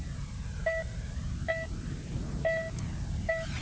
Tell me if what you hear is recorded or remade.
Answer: recorded